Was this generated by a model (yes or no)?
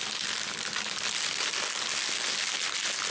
no